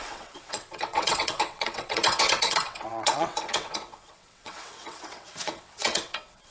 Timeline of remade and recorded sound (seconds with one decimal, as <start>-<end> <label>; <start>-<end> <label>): 0.0-6.5 remade